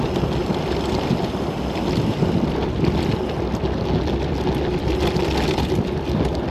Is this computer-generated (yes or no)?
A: no